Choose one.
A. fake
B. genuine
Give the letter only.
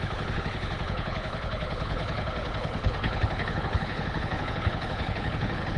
A